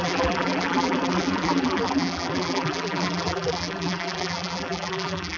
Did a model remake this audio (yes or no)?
yes